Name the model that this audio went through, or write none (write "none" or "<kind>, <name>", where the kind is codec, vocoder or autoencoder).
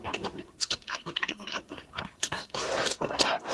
codec, SNAC